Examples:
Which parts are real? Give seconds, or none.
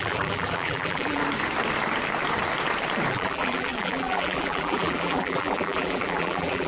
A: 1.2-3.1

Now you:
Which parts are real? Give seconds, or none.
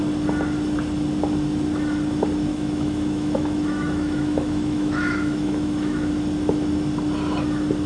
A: 0.0-2.5; 6.1-7.9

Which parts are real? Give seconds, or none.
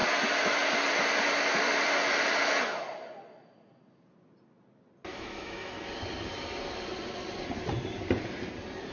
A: 0.0-5.1; 5.7-8.9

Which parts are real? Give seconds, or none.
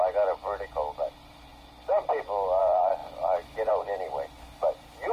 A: 1.5-2.6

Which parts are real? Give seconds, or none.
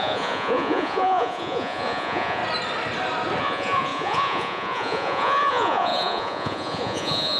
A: 2.4-3.4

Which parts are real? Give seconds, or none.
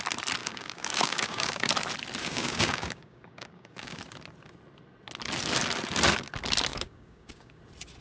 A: 0.0-0.4; 1.7-2.2; 4.0-6.7; 7.6-8.0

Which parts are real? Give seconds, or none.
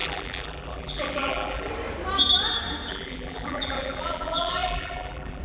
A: 1.7-2.9